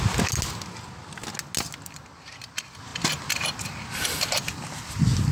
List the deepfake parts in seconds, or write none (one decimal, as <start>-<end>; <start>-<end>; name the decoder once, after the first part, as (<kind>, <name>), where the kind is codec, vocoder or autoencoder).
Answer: none